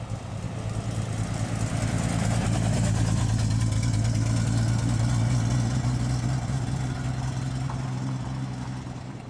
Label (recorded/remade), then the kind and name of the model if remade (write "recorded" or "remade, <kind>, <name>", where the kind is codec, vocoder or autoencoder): recorded